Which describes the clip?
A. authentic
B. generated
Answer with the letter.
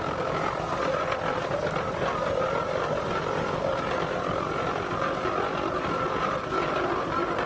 A